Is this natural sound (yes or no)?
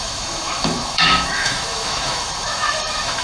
no